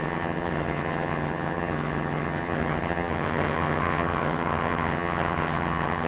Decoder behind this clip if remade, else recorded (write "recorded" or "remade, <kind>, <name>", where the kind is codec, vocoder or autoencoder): remade, vocoder, HiFi-GAN